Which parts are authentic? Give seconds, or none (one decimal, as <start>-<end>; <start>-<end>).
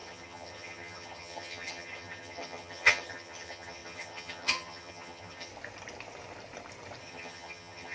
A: 5.5-7.0